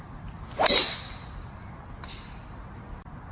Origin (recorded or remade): recorded